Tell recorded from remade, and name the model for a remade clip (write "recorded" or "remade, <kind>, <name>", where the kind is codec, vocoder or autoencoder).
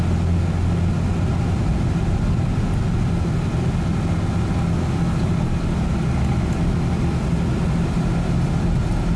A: recorded